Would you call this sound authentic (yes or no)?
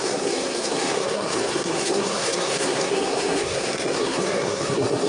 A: no